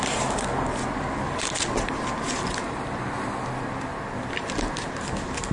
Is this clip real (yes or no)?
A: yes